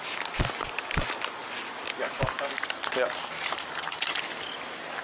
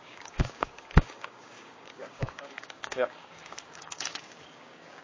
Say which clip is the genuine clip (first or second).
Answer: first